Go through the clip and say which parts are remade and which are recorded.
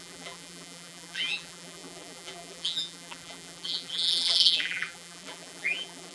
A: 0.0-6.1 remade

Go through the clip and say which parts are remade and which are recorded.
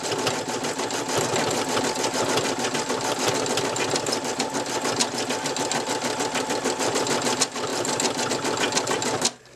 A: 0.0-9.6 recorded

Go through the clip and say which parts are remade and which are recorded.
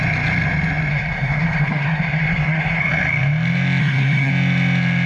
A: 0.0-0.9 recorded; 0.9-2.8 remade; 2.8-3.8 recorded; 3.8-4.3 remade; 4.3-5.1 recorded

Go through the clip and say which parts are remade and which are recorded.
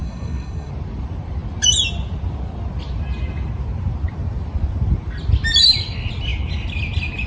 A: 0.0-0.7 remade; 0.7-7.3 recorded